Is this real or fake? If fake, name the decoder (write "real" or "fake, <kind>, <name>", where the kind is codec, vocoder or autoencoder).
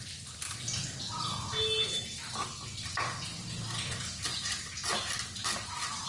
real